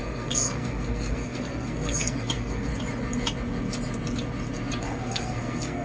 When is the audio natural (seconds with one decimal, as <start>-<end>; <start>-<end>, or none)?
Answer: 2.7-4.8